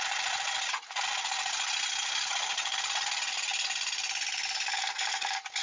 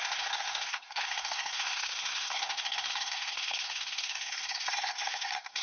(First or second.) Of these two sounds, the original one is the first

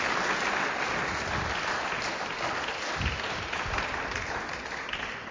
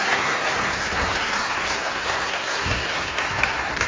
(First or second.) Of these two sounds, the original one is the first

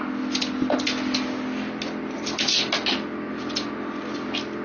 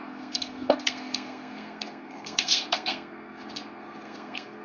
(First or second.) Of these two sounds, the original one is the first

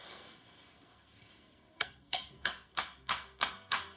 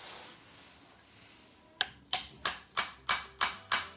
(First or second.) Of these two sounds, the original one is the second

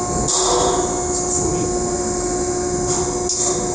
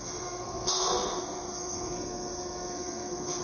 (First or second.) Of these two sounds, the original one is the first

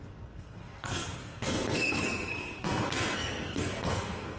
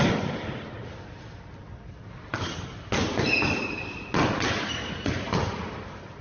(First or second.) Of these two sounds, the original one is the second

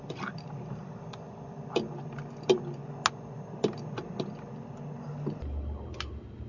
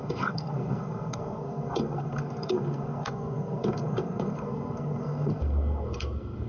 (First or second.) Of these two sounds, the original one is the first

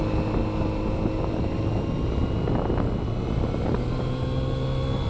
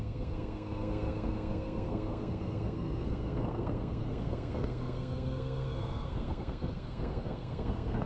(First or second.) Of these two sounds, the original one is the first